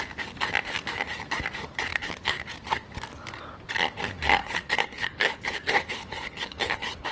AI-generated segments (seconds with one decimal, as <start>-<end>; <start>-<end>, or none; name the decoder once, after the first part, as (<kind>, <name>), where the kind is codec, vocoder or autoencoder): 1.9-2.5 (codec, HILCodec); 4.4-7.1

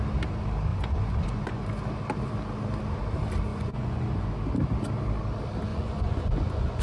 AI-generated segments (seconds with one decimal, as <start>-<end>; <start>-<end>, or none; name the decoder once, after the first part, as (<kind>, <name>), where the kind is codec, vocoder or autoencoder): 0.7-1.7 (vocoder, Vocos); 3.5-4.3; 5.7-6.8

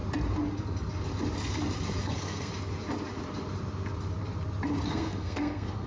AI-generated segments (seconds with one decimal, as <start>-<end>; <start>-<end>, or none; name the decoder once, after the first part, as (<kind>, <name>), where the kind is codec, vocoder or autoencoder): 2.0-2.5 (codec, SNAC); 4.9-5.9

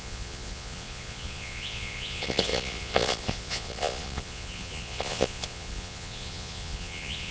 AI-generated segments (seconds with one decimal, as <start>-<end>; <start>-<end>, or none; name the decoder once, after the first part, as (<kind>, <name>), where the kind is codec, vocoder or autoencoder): 0.0-7.3 (vocoder, Vocos)

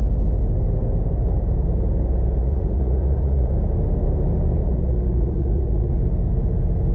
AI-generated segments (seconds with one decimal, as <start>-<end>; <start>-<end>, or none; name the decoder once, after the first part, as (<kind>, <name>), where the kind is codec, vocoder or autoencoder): 2.4-3.5 (vocoder, Vocos); 4.6-5.9

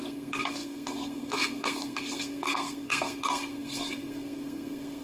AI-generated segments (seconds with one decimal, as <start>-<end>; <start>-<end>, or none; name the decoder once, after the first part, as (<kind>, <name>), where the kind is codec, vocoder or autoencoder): 0.0-5.0 (codec, SNAC)

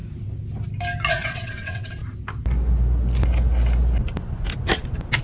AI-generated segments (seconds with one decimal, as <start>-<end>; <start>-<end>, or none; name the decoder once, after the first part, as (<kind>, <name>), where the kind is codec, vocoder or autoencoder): 1.1-2.0 (vocoder, WaveNeXt)

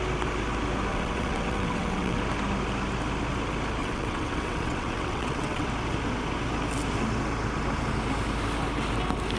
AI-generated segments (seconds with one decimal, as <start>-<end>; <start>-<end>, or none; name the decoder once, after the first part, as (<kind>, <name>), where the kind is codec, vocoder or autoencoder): 0.9-2.2 (vocoder, WaveNeXt); 3.8-5.7